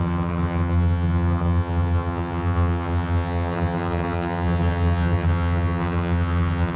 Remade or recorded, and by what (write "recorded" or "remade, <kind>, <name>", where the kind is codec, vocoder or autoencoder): remade, vocoder, HiFi-GAN